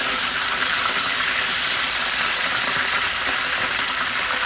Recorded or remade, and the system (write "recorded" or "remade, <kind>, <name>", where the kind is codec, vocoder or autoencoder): remade, vocoder, BigVGAN v2